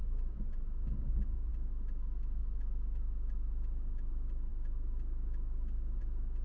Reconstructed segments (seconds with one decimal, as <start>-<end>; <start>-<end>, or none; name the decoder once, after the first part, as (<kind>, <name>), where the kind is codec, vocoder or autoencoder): none